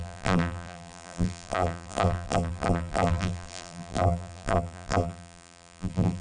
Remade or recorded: remade